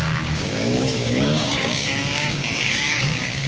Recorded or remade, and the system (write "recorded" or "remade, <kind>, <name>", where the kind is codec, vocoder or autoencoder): remade, codec, DAC